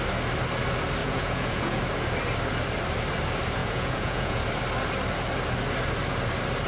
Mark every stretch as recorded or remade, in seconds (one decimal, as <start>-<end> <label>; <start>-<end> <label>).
0.0-1.0 recorded; 1.0-1.8 remade; 1.8-3.6 recorded; 3.6-4.4 remade; 4.4-6.7 recorded

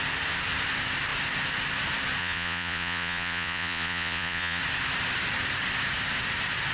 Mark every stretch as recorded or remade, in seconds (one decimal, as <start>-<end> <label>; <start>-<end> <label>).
0.0-2.2 recorded; 2.2-4.6 remade; 4.6-6.7 recorded

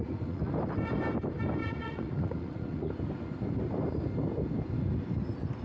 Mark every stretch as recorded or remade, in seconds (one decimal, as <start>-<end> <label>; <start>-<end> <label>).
0.0-0.5 remade; 0.5-1.6 recorded; 1.6-2.9 remade; 2.9-5.6 recorded

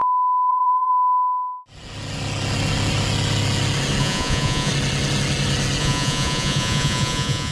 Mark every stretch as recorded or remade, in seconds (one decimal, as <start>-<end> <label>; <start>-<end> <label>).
0.0-0.5 recorded; 0.5-0.9 remade; 0.9-4.0 recorded; 4.0-4.7 remade; 4.7-5.8 recorded; 5.8-7.5 remade

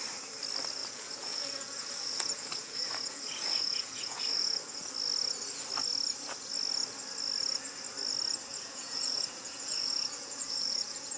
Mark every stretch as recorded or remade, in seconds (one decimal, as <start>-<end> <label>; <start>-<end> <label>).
0.0-0.8 recorded; 0.8-4.9 remade; 4.9-8.5 recorded; 8.5-11.2 remade

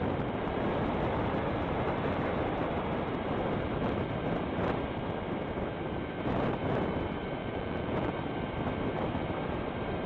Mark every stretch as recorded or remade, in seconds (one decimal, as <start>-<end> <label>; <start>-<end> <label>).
0.0-7.4 recorded; 7.4-8.1 remade; 8.1-10.1 recorded

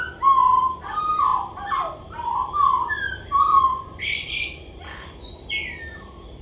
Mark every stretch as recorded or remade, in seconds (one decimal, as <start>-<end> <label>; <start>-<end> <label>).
0.0-3.7 recorded; 3.7-5.3 remade; 5.3-6.4 recorded

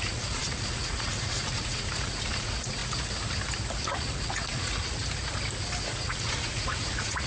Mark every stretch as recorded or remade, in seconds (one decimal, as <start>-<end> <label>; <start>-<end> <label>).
0.0-2.8 remade; 2.8-3.7 recorded; 3.7-5.0 remade; 5.0-5.8 recorded; 5.8-7.3 remade